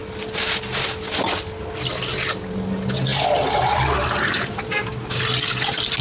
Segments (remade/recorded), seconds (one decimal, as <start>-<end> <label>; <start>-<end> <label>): 0.0-4.7 recorded; 4.7-5.2 remade; 5.2-6.0 recorded